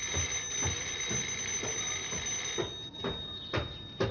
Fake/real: real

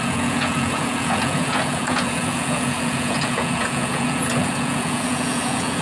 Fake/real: fake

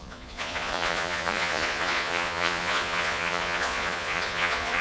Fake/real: fake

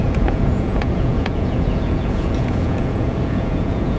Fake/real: fake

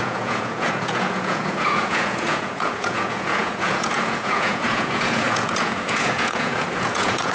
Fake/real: fake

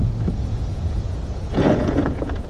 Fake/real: fake